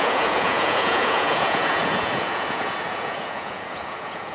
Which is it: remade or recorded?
remade